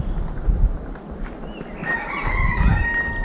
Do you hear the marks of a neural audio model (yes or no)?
no